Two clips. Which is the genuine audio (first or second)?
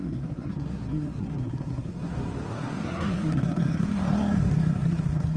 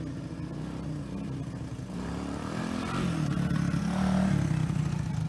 second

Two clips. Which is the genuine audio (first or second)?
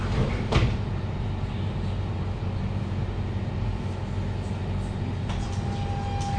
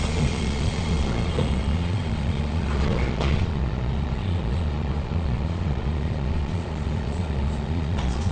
first